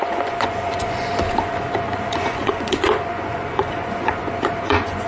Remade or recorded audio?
remade